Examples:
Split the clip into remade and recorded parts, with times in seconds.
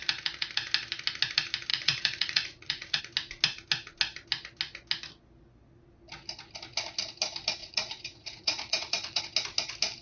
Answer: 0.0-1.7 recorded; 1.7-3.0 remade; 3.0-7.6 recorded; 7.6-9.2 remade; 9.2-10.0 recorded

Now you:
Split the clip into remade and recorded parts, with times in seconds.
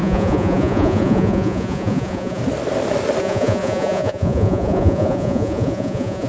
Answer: 0.0-2.4 remade; 2.4-3.2 recorded; 3.2-6.3 remade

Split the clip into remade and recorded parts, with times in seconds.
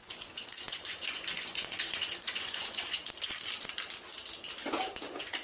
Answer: 0.0-3.0 remade; 3.0-4.9 recorded; 4.9-5.4 remade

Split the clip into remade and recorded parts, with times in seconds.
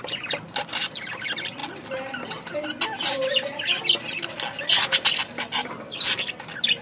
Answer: 0.0-6.8 recorded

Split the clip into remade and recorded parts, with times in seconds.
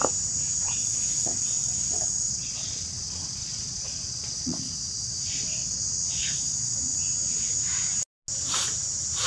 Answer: 0.0-0.8 recorded; 0.8-5.8 remade; 5.8-6.2 recorded; 6.2-6.8 remade; 6.8-9.3 recorded